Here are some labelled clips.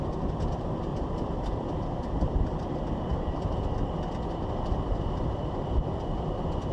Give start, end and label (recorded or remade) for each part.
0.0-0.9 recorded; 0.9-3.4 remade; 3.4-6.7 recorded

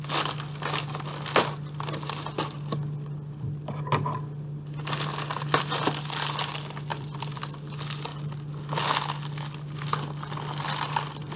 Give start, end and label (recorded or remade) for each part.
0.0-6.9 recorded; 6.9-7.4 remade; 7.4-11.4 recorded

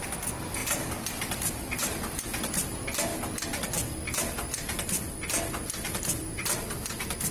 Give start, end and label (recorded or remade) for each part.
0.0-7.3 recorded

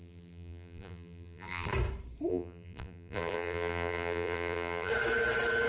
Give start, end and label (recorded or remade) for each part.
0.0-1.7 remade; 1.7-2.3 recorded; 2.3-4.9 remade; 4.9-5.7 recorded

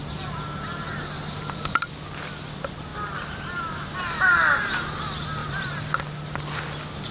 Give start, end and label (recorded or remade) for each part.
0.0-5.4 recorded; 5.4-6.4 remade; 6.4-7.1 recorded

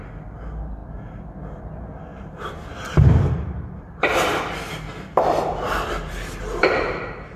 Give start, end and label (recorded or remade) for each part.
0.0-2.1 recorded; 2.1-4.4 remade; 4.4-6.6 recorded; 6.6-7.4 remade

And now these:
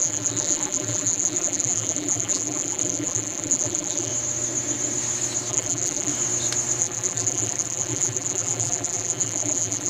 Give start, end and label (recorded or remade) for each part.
0.0-4.1 remade; 4.1-5.5 recorded; 5.5-6.1 remade; 6.1-6.8 recorded; 6.8-9.9 remade

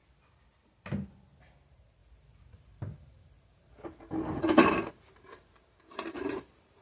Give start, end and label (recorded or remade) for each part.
0.0-1.6 recorded; 1.6-6.8 remade